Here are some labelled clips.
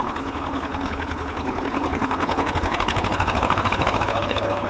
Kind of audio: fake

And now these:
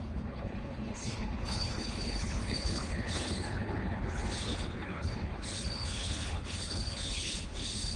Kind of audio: fake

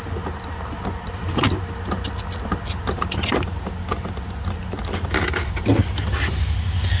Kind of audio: real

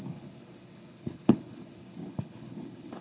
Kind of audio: fake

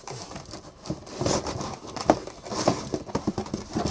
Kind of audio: real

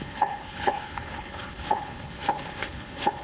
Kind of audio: fake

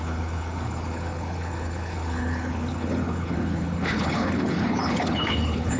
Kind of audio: fake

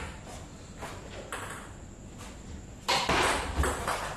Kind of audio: real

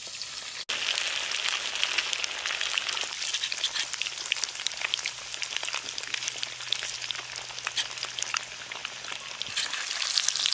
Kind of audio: real